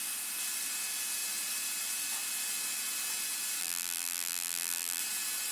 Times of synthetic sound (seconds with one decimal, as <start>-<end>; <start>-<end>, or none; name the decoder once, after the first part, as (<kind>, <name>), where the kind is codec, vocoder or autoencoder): 3.6-5.0 (vocoder, BigVGAN v2)